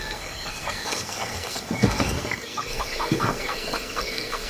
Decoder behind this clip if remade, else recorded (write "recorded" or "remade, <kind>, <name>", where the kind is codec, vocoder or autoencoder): remade, codec, SNAC